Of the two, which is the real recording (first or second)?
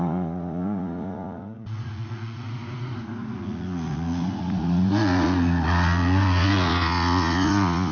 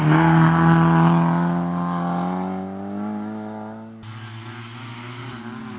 second